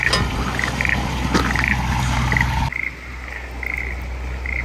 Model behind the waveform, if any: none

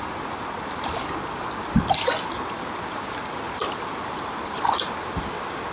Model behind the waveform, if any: none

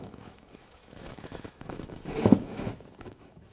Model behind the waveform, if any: autoencoder, DAC-VAE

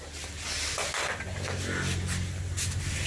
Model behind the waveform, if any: none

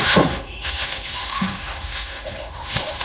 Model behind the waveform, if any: autoencoder, DAC-VAE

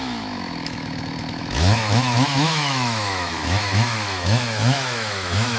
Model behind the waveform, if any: autoencoder, DAC-VAE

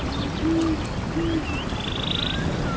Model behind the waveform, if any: none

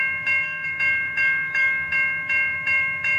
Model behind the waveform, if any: autoencoder, DAC-VAE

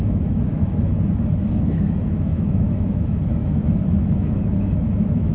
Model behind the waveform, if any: autoencoder, DAC-VAE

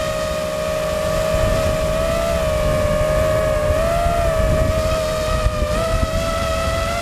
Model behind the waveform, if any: none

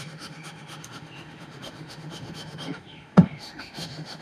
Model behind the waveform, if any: autoencoder, DAC-VAE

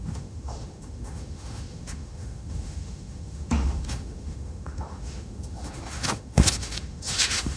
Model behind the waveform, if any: autoencoder, DAC-VAE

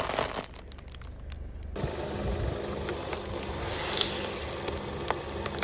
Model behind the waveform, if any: none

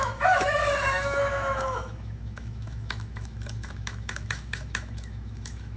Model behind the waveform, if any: autoencoder, DAC-VAE